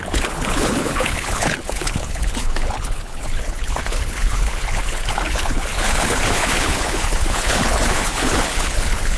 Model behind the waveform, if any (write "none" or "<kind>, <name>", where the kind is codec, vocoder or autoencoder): codec, HILCodec